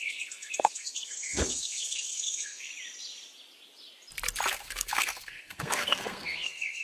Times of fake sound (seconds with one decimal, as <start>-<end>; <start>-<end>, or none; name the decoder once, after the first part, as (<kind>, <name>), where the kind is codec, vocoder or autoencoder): 0.0-2.7 (codec, SNAC); 4.5-6.8